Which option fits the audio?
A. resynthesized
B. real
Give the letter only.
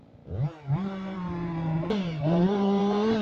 A